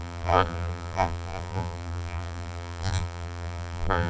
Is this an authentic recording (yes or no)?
no